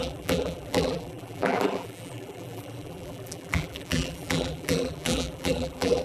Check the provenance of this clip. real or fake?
fake